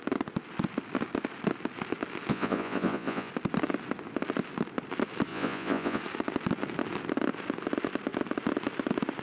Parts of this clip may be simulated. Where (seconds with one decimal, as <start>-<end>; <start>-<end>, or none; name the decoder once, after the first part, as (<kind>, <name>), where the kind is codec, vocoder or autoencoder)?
2.3-3.3 (vocoder, Vocos); 5.3-6.0